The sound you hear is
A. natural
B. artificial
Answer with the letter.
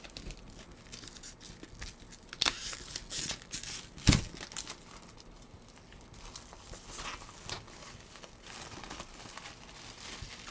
A